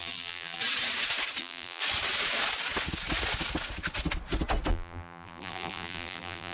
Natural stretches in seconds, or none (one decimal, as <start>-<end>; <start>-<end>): 0.6-1.4; 1.8-4.7